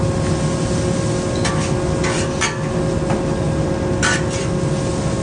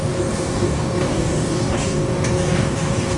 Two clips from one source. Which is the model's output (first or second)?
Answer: second